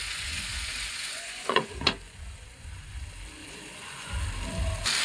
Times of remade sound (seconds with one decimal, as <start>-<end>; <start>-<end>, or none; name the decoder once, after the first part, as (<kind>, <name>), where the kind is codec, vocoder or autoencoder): 0.0-3.0 (vocoder, Vocos); 3.4-4.1